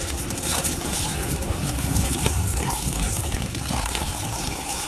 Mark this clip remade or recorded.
remade